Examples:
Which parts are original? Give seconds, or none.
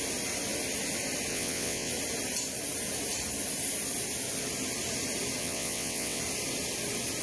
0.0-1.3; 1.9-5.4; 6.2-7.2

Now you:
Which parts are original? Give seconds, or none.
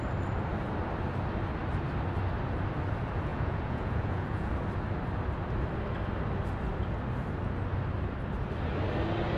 0.0-3.3; 4.5-9.4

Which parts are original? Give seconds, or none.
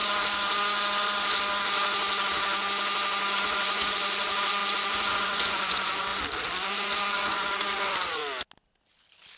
0.0-3.3; 6.1-6.7; 8.2-9.4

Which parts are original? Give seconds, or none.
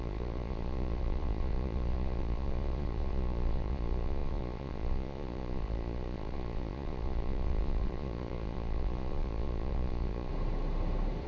10.3-11.3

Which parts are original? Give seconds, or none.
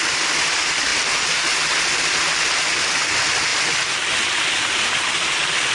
0.0-5.7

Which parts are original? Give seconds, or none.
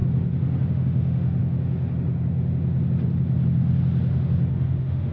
0.0-0.7; 1.4-4.5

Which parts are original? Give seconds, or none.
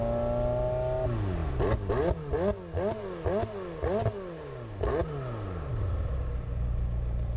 0.0-7.4